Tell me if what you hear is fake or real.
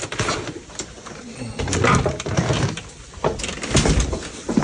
real